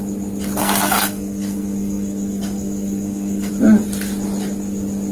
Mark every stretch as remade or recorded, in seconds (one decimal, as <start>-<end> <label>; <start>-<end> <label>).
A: 0.0-0.6 recorded; 0.6-3.5 remade; 3.5-5.1 recorded